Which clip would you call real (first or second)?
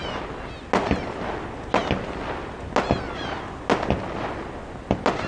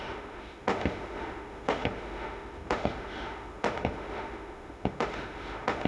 first